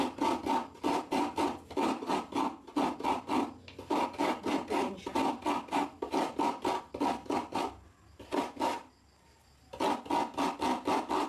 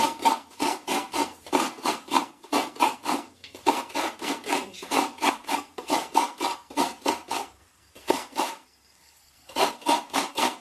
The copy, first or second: second